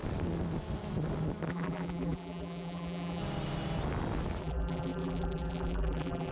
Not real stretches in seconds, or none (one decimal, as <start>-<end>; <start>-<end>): 1.5-3.2; 4.4-6.3